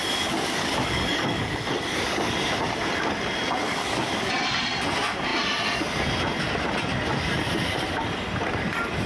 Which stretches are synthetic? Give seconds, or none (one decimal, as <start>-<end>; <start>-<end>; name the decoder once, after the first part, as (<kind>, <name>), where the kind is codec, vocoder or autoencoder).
0.0-2.3 (codec, DAC); 3.6-4.3